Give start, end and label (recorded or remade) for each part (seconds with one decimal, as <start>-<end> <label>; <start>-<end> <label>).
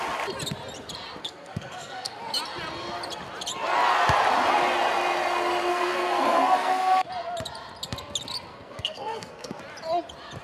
0.0-1.2 recorded; 1.2-2.2 remade; 2.2-5.7 recorded; 5.7-7.1 remade; 7.1-8.5 recorded; 8.5-9.6 remade; 9.6-10.4 recorded